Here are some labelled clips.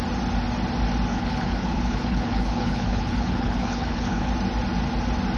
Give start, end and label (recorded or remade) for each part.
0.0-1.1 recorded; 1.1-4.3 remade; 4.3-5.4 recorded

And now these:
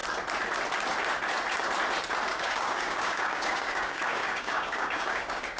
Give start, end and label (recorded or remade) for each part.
0.0-2.3 recorded; 2.3-5.6 remade

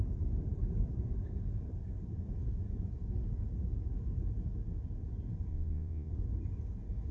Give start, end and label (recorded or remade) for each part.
0.0-5.5 recorded; 5.5-6.1 remade; 6.1-7.1 recorded

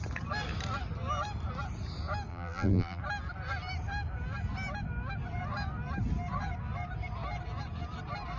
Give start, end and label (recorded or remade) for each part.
0.0-2.3 recorded; 2.3-3.0 remade; 3.0-8.4 recorded

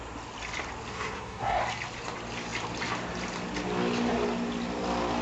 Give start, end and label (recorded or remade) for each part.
0.0-0.9 recorded; 0.9-1.6 remade; 1.6-5.2 recorded

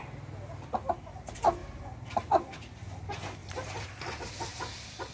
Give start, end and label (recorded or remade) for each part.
0.0-1.6 recorded; 1.6-2.4 remade; 2.4-3.4 recorded; 3.4-4.0 remade; 4.0-4.5 recorded; 4.5-5.1 remade